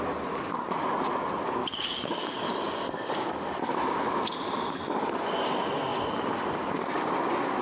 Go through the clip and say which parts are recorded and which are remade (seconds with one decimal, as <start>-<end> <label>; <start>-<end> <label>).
0.0-1.6 recorded; 1.6-3.3 remade; 3.3-7.6 recorded